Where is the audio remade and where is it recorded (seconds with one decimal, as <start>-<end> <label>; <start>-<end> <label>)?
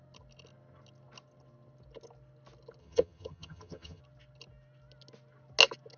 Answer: 0.0-2.8 recorded; 2.8-4.0 remade; 4.0-6.0 recorded